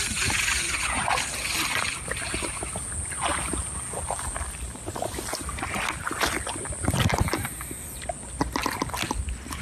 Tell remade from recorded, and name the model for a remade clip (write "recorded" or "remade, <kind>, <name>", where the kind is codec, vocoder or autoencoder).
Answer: recorded